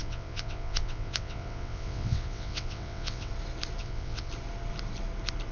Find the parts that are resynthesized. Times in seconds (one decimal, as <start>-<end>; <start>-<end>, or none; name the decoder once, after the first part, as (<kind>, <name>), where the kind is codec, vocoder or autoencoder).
0.0-3.3 (vocoder, WaveNeXt); 3.8-4.3